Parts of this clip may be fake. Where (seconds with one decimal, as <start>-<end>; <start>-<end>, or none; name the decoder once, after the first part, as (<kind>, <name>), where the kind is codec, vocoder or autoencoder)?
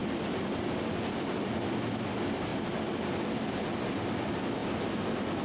0.0-0.6 (vocoder, BigVGAN v2)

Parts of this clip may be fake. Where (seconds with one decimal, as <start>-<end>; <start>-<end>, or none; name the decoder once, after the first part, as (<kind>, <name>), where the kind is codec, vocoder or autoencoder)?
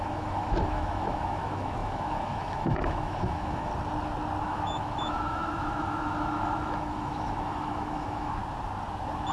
0.0-3.7 (autoencoder, DAC-VAE); 4.4-8.4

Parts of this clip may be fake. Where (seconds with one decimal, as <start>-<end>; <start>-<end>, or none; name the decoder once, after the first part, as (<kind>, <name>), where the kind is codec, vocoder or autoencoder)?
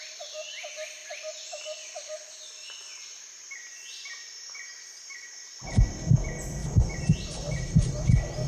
1.0-2.4 (vocoder, BigVGAN v2); 5.1-6.0; 6.6-7.6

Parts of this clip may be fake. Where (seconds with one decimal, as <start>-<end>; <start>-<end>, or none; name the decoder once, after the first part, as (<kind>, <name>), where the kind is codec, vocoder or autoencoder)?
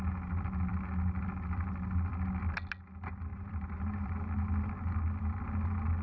3.3-4.3 (vocoder, BigVGAN v2)